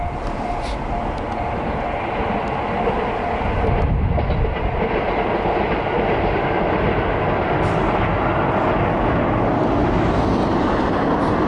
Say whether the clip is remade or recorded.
recorded